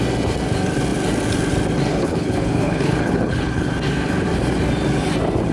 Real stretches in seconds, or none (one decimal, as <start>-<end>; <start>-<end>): 0.0-1.9; 3.7-5.5